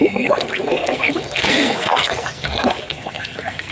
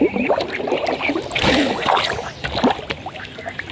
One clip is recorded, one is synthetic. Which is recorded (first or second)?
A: second